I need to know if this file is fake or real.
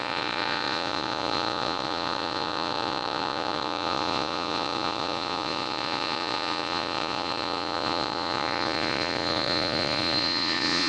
fake